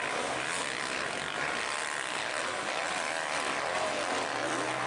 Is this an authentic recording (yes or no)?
yes